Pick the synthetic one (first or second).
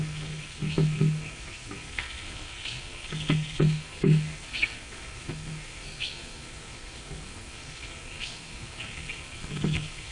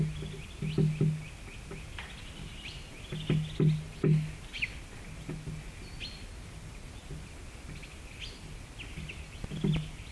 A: first